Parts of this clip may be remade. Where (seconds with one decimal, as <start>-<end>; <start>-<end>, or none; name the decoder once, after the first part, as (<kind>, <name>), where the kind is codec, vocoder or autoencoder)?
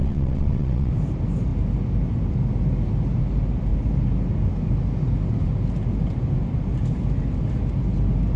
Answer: 0.0-0.9 (vocoder, WaveNeXt)